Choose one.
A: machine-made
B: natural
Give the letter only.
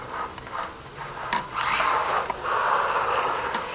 B